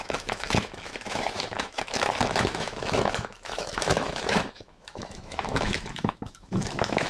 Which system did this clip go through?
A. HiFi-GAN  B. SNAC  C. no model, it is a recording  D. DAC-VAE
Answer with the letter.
D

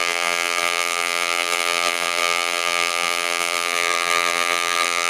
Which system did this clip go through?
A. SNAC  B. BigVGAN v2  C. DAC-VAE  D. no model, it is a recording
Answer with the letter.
B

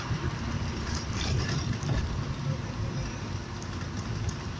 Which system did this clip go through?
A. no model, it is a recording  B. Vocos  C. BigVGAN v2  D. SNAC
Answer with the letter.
A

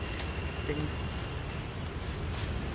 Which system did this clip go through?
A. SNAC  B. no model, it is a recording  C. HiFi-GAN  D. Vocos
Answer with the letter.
B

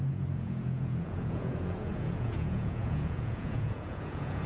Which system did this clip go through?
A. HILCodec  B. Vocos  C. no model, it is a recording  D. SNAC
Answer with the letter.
B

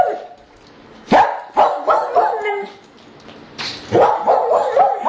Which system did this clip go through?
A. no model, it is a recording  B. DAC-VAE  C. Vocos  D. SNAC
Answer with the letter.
A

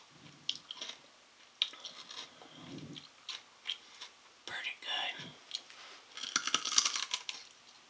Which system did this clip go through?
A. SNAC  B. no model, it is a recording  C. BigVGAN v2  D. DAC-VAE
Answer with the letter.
B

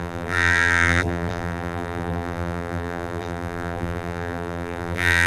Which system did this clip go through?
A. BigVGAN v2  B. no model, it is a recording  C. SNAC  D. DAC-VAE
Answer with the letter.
A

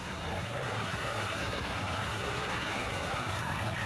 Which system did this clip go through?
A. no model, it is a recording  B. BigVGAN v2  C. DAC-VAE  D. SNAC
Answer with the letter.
D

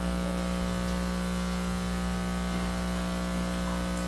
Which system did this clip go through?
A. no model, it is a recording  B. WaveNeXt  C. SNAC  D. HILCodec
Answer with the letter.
A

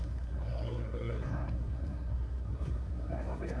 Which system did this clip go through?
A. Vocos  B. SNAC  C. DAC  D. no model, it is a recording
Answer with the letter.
B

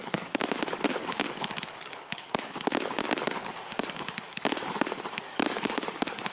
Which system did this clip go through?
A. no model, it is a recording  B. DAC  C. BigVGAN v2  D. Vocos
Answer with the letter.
B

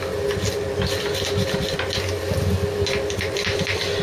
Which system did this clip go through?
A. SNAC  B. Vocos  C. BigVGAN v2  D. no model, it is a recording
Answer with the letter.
D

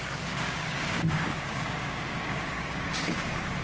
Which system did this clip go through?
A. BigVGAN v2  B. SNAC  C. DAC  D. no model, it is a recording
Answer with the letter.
C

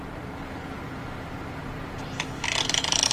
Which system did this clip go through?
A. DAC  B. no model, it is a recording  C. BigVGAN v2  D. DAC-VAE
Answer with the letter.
C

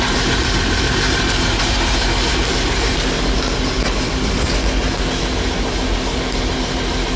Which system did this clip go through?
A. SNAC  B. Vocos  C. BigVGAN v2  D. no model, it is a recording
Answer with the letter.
D